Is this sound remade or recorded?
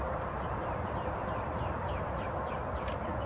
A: recorded